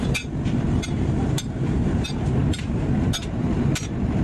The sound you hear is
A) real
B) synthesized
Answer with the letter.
B